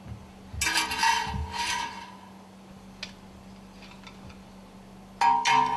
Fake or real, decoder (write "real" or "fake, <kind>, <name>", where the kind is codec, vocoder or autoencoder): real